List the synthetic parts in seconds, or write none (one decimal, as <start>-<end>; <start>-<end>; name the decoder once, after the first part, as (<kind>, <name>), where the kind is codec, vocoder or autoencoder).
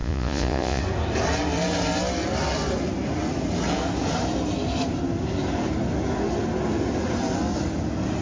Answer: 0.0-0.8 (vocoder, Vocos)